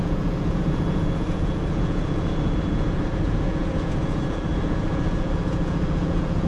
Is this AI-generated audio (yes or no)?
yes